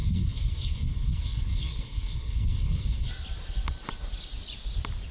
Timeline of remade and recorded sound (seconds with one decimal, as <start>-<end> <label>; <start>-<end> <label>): 0.0-3.1 remade; 3.1-5.1 recorded